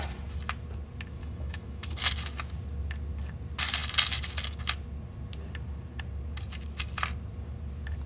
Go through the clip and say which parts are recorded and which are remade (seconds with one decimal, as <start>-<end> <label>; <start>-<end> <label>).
0.0-1.2 recorded; 1.2-1.9 remade; 1.9-8.1 recorded